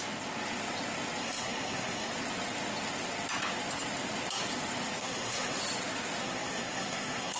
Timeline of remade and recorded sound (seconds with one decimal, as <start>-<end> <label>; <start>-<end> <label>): 0.0-1.2 recorded; 1.2-2.1 remade; 2.1-5.0 recorded; 5.0-5.6 remade; 5.6-6.2 recorded; 6.2-7.4 remade